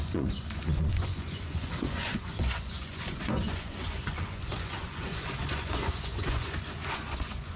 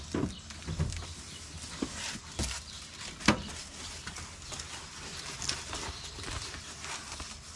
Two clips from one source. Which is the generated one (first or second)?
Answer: first